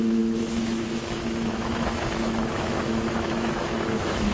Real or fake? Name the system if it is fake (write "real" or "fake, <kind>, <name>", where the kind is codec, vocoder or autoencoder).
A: fake, autoencoder, DAC-VAE